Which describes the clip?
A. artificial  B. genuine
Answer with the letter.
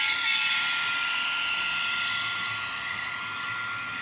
B